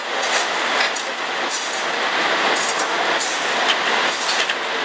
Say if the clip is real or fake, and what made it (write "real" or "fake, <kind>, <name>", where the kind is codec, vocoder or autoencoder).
real